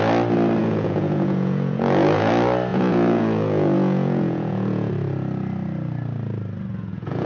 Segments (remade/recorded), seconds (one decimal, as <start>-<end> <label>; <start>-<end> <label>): 0.0-0.6 recorded; 0.6-2.3 remade; 2.3-2.7 recorded; 2.7-4.9 remade; 4.9-6.7 recorded; 6.7-7.3 remade